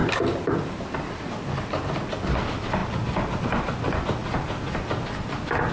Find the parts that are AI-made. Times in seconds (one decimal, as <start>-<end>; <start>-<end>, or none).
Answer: none